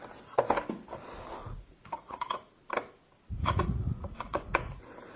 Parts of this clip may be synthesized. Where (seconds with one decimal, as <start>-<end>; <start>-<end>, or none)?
1.4-2.5; 3.4-4.8